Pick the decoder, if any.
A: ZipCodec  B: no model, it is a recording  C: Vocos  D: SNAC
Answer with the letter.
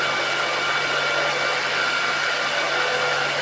B